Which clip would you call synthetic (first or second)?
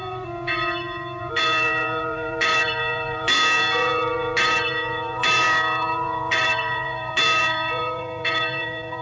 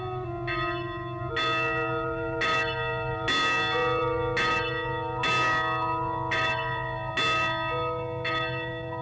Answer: first